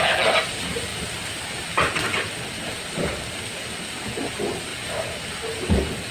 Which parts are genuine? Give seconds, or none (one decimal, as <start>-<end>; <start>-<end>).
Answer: 0.0-6.1